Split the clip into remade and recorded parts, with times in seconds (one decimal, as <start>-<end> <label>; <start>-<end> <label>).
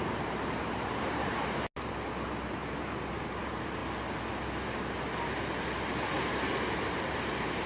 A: 0.0-1.4 remade; 1.4-3.4 recorded; 3.4-3.8 remade; 3.8-6.8 recorded; 6.8-7.7 remade